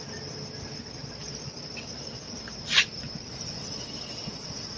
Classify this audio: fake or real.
real